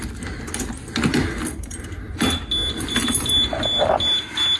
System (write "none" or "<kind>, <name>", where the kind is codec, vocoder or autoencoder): none